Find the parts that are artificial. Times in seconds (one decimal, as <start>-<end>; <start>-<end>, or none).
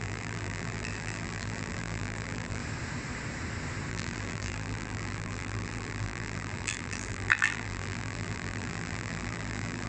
0.0-2.6; 3.9-9.9